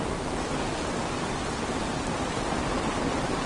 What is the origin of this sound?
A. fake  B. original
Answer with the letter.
B